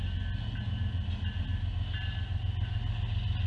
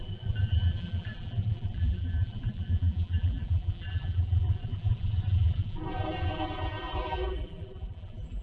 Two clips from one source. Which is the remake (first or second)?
second